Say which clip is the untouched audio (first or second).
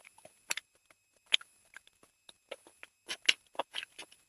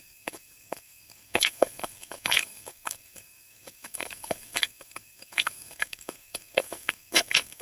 first